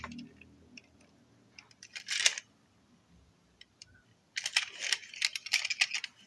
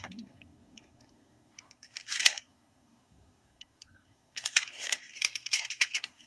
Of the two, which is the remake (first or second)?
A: second